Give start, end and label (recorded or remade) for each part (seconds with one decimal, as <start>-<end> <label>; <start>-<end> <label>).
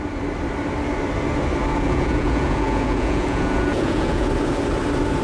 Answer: 0.0-1.7 recorded; 1.7-4.3 remade; 4.3-5.2 recorded